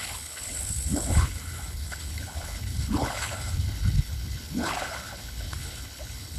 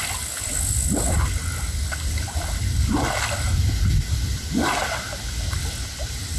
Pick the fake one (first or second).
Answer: first